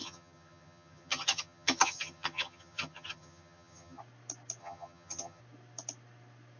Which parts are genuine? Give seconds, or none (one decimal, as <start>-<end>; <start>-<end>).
4.0-4.6; 5.4-6.6